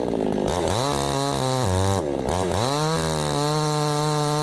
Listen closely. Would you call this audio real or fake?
real